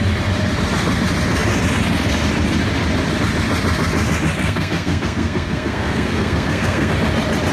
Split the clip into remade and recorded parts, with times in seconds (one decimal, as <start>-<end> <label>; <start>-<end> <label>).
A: 0.0-4.4 recorded; 4.4-6.9 remade; 6.9-7.5 recorded